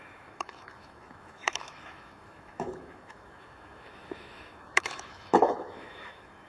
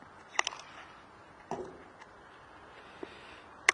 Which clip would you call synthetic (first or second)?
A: first